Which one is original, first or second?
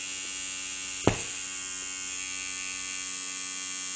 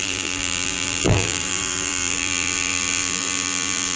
first